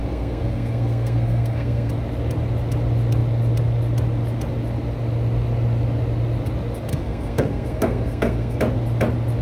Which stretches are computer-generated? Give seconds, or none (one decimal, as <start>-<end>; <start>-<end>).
0.0-1.9; 6.9-8.6